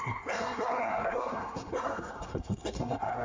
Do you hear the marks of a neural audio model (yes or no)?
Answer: yes